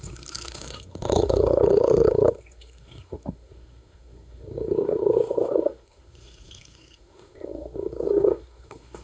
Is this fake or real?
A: fake